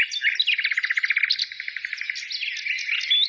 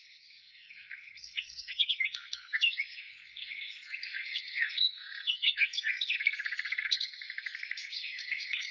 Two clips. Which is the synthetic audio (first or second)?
second